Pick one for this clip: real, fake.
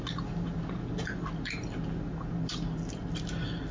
real